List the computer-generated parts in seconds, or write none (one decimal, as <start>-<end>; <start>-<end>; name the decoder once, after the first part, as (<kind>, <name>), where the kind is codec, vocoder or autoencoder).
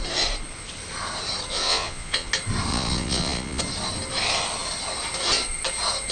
1.5-2.3 (vocoder, Vocos); 2.7-3.6